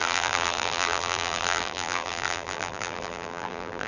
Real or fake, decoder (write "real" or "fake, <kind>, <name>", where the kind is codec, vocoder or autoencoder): fake, vocoder, BigVGAN v2